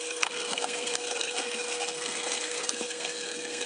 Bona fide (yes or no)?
no